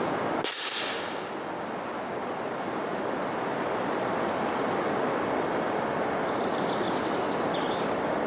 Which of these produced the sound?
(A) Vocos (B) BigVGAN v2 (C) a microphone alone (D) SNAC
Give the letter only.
C